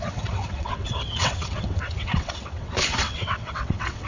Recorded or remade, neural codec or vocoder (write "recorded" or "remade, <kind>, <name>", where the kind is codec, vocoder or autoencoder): remade, vocoder, WaveNeXt